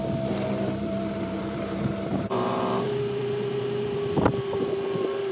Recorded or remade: remade